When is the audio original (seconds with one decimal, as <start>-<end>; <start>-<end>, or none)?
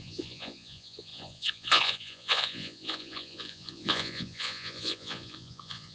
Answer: none